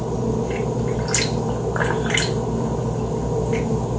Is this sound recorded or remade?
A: recorded